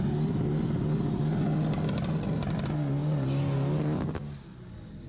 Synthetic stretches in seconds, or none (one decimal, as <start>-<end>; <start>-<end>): none